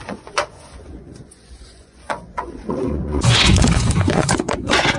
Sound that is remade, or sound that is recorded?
remade